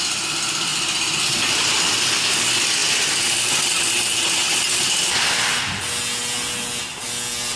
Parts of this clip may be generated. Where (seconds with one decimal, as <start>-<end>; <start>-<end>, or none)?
0.7-1.4